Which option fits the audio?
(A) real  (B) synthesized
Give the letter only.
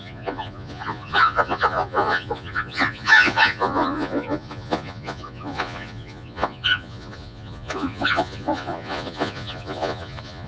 B